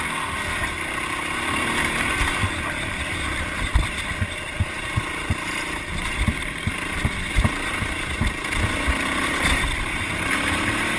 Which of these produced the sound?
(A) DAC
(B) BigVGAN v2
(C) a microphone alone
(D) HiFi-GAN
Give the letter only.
B